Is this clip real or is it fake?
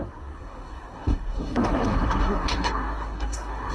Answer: fake